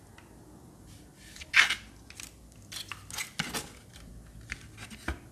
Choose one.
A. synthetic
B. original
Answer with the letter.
B